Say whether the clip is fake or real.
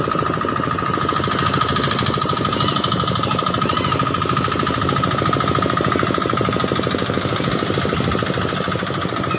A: real